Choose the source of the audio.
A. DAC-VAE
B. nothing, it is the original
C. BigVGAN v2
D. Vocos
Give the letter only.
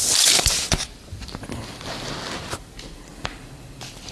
C